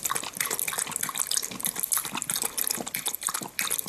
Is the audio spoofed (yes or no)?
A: no